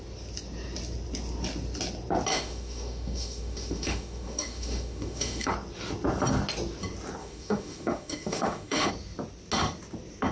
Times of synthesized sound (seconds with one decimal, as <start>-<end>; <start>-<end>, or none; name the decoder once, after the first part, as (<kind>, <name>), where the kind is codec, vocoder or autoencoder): 2.3-5.5 (autoencoder, DAC-VAE); 7.2-8.9